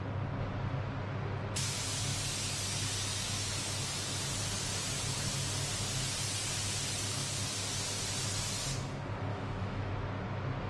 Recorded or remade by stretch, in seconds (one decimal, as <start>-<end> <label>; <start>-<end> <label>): 0.0-9.3 recorded; 9.3-9.9 remade; 9.9-10.7 recorded